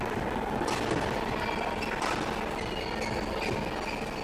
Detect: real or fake real